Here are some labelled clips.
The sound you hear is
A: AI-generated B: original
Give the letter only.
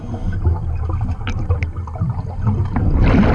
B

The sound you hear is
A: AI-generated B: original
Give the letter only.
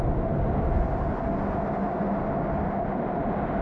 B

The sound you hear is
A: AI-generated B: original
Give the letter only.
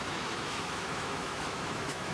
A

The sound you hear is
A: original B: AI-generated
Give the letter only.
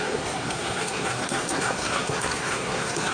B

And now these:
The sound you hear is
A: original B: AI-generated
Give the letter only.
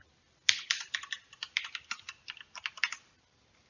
A